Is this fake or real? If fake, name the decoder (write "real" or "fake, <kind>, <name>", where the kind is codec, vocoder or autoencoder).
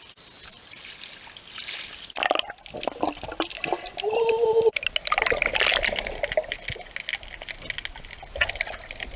real